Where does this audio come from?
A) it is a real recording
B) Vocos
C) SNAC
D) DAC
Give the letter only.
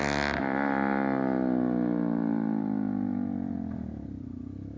A